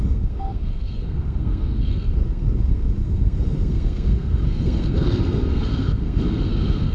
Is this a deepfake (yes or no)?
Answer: yes